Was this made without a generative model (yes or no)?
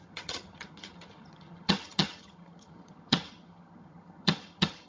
no